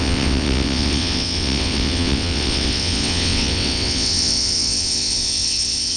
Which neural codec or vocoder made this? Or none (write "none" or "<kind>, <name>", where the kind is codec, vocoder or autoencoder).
vocoder, WaveNeXt